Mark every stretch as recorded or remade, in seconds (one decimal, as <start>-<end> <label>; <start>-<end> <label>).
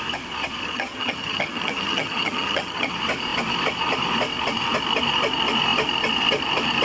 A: 0.0-0.6 recorded; 0.6-2.9 remade; 2.9-6.8 recorded